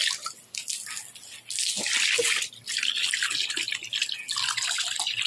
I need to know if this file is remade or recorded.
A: recorded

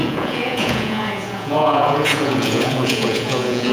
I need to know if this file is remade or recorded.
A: remade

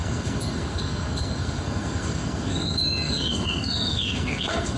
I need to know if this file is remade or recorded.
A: remade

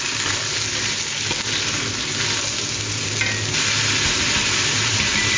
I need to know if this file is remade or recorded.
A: recorded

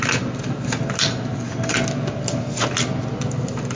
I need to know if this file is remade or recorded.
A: recorded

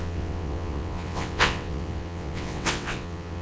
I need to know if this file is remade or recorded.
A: remade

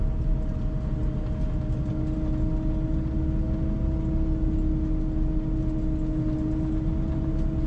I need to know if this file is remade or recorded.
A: recorded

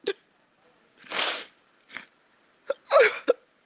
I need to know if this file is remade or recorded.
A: recorded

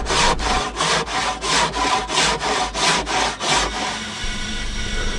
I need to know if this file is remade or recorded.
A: recorded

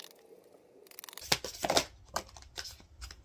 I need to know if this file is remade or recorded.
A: recorded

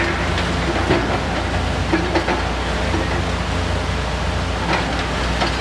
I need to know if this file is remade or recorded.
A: recorded